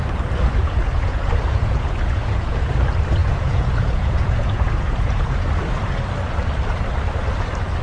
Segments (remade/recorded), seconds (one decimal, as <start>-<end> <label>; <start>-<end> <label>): 0.0-0.5 recorded; 0.5-2.7 remade; 2.7-3.2 recorded; 3.2-5.5 remade; 5.5-7.8 recorded